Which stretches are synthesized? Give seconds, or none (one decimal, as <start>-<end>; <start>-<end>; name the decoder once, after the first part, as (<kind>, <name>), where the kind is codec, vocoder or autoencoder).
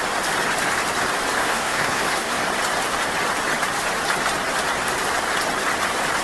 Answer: 1.4-2.4 (codec, SNAC)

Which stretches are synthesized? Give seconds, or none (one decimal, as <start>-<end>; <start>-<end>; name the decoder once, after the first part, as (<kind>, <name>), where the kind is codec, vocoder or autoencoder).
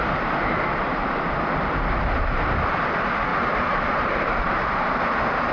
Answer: 3.3-4.9 (vocoder, BigVGAN v2)